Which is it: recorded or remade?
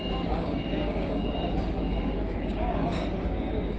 remade